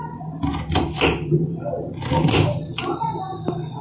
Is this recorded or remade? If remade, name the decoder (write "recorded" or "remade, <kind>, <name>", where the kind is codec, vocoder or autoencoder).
recorded